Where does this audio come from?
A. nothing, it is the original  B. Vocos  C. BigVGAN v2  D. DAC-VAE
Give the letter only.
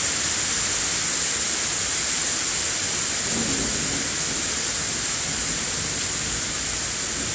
A